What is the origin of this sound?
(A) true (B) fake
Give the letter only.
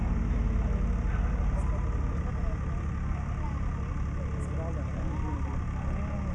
A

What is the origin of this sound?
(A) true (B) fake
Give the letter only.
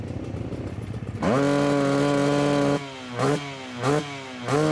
A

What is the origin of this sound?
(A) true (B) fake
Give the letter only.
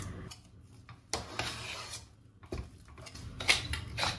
A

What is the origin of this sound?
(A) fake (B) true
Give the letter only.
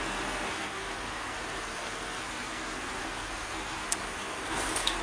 A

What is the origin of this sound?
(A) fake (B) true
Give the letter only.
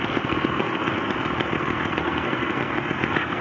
A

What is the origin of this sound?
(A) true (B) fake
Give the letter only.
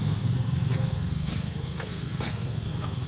B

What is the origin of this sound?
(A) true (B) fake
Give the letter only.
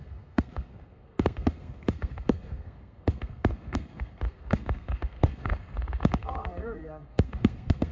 B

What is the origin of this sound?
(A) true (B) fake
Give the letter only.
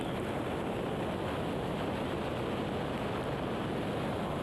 A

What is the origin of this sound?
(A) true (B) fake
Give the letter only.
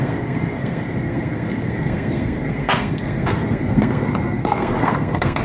B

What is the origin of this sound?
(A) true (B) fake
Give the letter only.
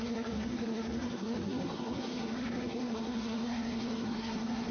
B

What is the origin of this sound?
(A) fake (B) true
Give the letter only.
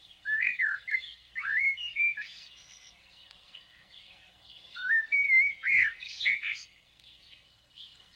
A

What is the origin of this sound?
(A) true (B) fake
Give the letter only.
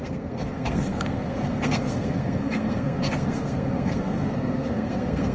B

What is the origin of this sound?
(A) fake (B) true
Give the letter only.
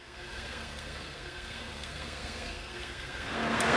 A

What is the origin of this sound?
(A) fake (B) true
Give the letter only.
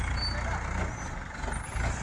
B